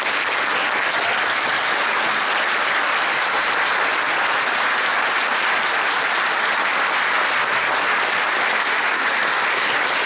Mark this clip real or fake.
real